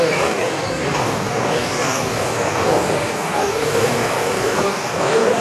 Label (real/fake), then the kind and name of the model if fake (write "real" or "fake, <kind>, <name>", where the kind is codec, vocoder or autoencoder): fake, codec, DAC